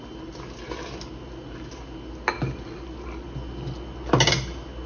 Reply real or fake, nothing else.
real